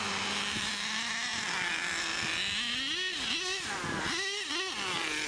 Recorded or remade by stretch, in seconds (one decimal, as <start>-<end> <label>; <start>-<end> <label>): 0.0-5.3 recorded